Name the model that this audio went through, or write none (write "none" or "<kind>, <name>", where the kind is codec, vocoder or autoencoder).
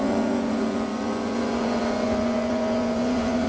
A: vocoder, Vocos